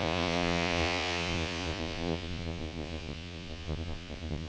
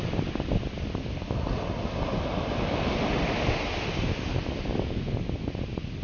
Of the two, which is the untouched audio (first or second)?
second